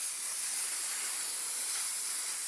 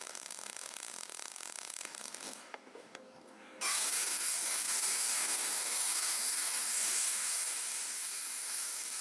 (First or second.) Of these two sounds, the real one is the first